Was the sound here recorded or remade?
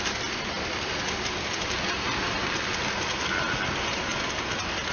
recorded